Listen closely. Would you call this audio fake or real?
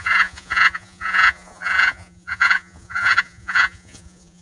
fake